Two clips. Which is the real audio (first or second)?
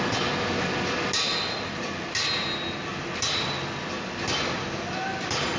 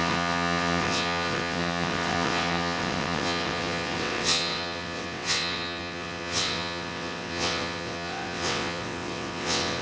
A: first